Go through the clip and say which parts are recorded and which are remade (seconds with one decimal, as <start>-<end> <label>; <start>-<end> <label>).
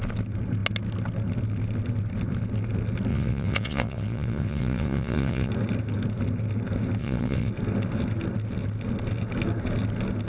0.0-3.1 recorded; 3.1-5.5 remade; 5.5-7.0 recorded; 7.0-7.5 remade; 7.5-10.3 recorded